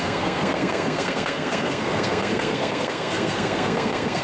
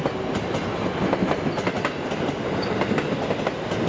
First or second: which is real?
second